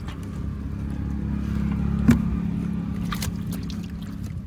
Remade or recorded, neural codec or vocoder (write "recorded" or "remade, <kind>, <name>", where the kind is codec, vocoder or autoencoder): recorded